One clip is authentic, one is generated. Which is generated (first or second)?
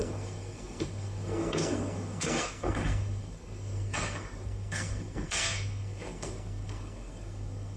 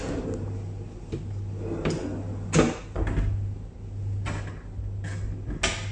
first